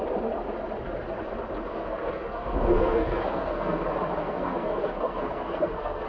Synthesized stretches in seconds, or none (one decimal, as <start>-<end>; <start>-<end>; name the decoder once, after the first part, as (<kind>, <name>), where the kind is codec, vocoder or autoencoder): 1.7-3.8 (codec, SNAC); 4.2-6.1